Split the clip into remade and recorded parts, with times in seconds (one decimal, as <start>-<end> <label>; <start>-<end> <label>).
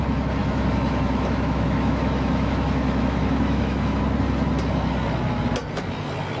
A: 0.0-0.4 recorded; 0.4-4.0 remade; 4.0-6.4 recorded